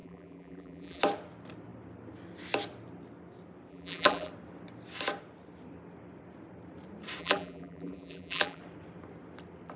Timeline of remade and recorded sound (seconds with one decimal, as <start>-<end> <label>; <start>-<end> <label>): 0.0-1.0 remade; 1.0-3.7 recorded; 3.7-4.3 remade; 4.3-7.2 recorded; 7.2-8.6 remade; 8.6-9.8 recorded